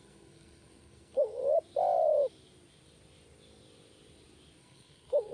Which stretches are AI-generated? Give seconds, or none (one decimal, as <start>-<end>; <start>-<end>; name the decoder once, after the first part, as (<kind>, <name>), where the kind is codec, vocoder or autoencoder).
0.0-1.4 (codec, SNAC); 4.6-5.3